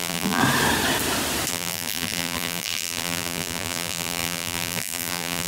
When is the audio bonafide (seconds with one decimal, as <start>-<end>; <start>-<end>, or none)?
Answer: 0.4-1.5